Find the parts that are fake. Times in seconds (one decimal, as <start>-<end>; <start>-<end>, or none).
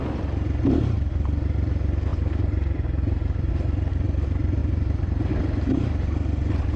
2.1-3.5; 4.6-5.3